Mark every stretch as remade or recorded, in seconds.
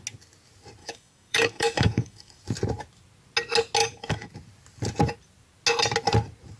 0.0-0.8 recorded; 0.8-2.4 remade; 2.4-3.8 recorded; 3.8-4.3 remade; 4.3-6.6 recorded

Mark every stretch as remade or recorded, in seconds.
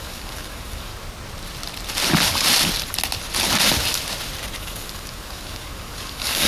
0.0-0.9 remade; 0.9-4.6 recorded; 4.6-6.5 remade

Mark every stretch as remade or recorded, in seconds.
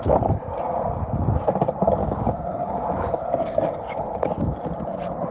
0.0-2.0 recorded; 2.0-3.2 remade; 3.2-5.3 recorded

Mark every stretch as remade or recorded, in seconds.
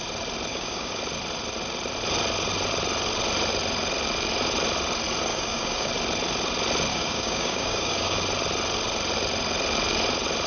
0.0-0.5 recorded; 0.5-1.0 remade; 1.0-5.3 recorded; 5.3-5.9 remade; 5.9-6.9 recorded; 6.9-8.2 remade; 8.2-10.5 recorded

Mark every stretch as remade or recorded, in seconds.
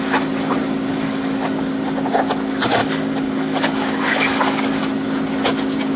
0.0-0.9 recorded; 0.9-1.7 remade; 1.7-2.8 recorded; 2.8-4.8 remade; 4.8-6.0 recorded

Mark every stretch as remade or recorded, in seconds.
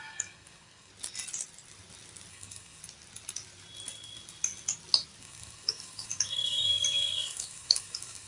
0.0-0.9 remade; 0.9-2.3 recorded; 2.3-2.8 remade; 2.8-5.2 recorded; 5.2-8.3 remade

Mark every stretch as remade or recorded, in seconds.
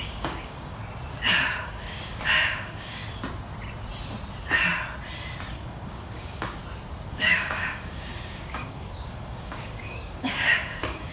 0.0-0.8 remade; 0.8-1.6 recorded; 1.6-3.0 remade; 3.0-5.5 recorded; 5.5-6.6 remade; 6.6-7.1 recorded; 7.1-11.1 remade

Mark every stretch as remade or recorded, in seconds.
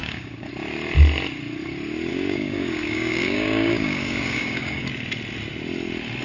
0.0-0.5 remade; 0.5-2.1 recorded; 2.1-4.9 remade; 4.9-6.2 recorded